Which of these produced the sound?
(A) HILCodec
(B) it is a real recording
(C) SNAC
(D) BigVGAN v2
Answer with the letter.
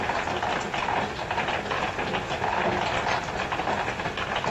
B